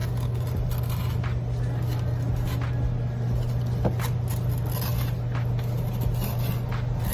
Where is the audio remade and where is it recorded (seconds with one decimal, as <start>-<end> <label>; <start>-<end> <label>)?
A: 0.0-7.1 recorded